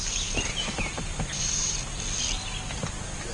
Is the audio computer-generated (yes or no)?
no